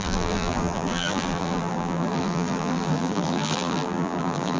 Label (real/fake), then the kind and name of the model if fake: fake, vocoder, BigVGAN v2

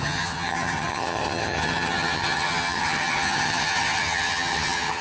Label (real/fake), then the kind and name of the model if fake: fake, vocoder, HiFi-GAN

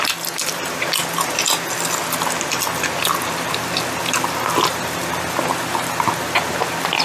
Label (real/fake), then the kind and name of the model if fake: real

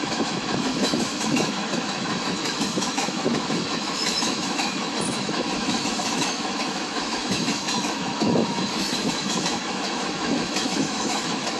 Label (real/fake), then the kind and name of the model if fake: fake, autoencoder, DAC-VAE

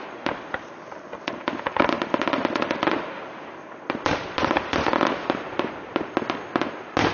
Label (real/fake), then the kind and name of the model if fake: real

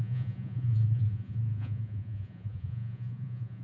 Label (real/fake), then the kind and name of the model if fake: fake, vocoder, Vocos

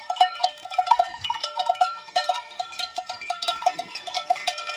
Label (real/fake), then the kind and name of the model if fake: fake, codec, SNAC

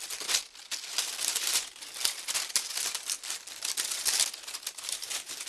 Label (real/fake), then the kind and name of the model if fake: real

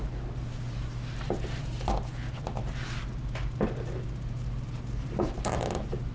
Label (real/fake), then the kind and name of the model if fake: real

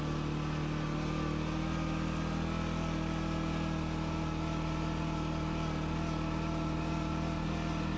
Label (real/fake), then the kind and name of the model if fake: real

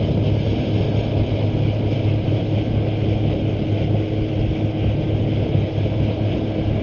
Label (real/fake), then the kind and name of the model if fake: real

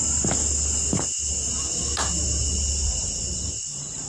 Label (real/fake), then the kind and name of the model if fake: real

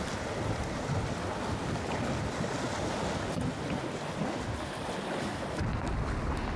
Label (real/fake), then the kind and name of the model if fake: real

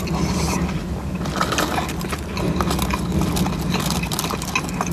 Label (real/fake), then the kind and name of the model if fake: real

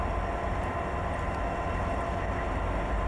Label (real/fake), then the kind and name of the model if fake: real